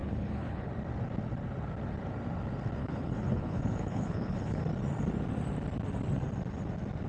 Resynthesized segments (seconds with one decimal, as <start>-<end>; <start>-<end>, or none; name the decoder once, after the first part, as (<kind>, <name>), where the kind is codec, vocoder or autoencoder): 0.0-0.7 (codec, HILCodec); 2.8-4.6